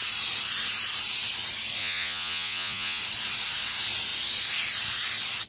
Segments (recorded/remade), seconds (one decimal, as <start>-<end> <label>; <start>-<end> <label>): 0.0-1.8 recorded; 1.8-3.0 remade; 3.0-5.5 recorded